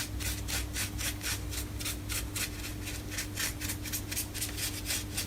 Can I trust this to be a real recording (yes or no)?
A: yes